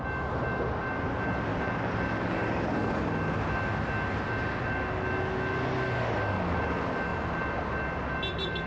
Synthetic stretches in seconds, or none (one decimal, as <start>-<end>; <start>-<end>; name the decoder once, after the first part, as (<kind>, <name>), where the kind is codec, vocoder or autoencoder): none